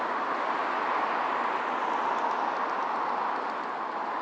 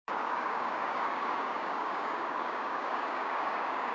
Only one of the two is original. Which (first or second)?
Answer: first